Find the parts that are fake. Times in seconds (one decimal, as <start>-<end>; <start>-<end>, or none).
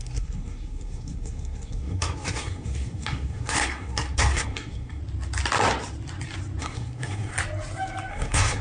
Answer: 0.0-5.0; 6.6-7.3; 8.1-8.6